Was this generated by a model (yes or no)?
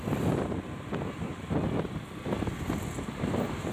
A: no